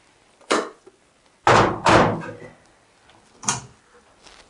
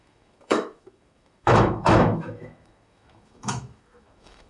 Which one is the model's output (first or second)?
second